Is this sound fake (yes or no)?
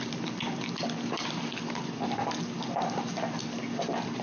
no